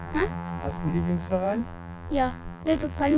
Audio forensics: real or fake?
fake